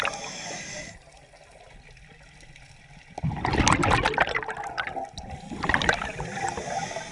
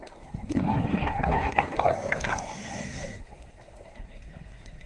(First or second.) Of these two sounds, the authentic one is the first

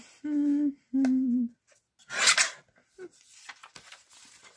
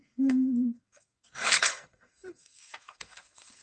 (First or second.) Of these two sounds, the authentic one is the first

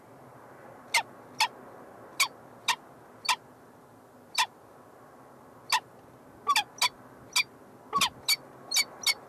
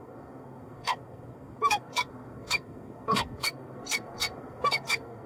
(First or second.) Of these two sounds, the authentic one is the first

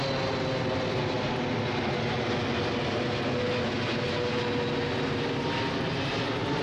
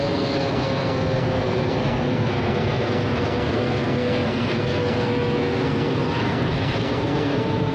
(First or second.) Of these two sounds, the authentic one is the first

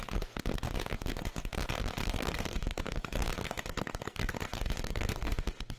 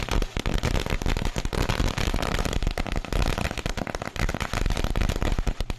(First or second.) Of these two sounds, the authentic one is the second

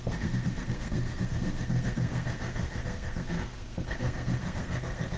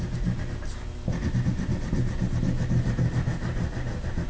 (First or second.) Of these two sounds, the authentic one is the second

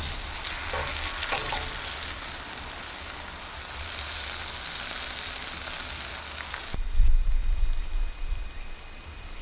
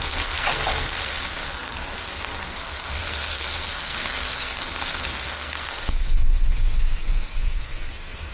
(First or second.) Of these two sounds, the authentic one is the first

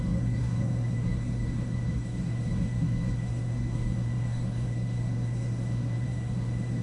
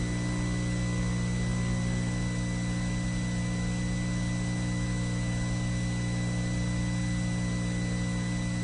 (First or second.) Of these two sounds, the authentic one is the second